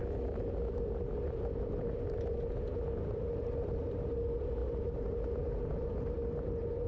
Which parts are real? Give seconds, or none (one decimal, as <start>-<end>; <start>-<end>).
0.0-6.9